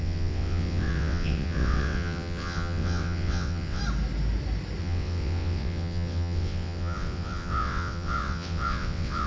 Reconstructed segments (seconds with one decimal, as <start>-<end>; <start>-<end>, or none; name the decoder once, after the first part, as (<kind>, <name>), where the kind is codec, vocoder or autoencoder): 0.0-3.8 (vocoder, WaveNeXt); 4.8-9.3